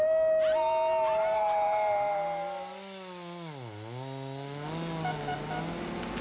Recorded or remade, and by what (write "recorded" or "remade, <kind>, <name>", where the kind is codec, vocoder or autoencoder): recorded